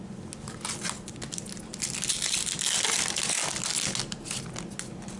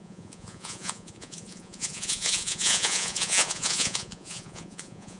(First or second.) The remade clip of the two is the second